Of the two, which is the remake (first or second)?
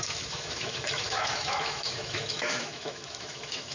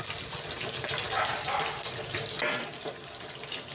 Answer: first